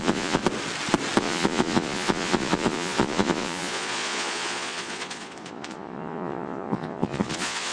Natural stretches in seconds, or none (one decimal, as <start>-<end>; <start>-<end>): 0.4-1.2